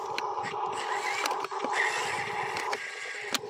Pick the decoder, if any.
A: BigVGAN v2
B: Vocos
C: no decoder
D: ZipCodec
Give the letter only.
C